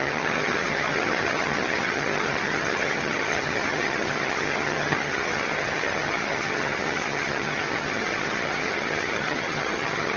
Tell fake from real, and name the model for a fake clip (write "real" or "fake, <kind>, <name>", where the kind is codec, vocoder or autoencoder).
fake, vocoder, HiFi-GAN